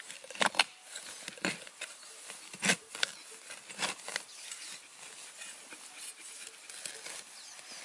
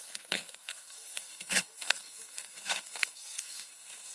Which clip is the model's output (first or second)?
second